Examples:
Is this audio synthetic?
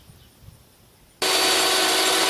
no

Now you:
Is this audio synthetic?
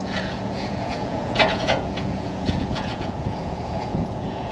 yes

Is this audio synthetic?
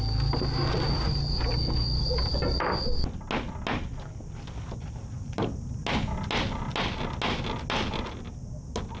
no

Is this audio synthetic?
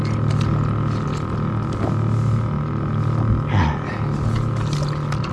no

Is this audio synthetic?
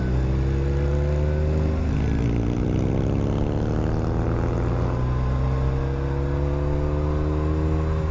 no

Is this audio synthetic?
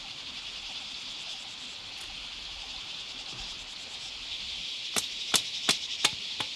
no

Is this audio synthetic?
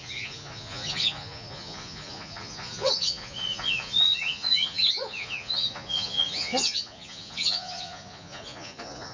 yes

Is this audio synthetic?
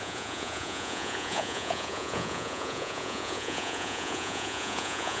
yes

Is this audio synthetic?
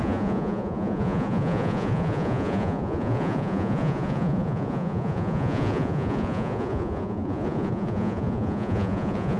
yes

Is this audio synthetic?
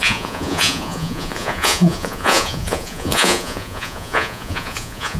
yes